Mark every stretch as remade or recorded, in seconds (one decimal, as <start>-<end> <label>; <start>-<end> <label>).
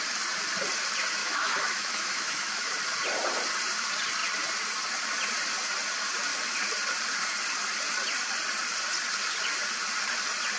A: 0.0-1.2 recorded; 1.2-2.7 remade; 2.7-10.6 recorded